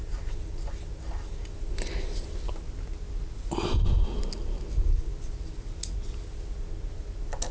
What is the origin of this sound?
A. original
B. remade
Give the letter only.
A